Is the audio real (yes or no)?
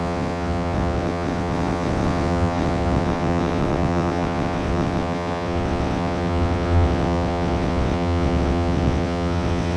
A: no